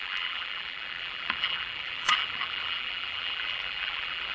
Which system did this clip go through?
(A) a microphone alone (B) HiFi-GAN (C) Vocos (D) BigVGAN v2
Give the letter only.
D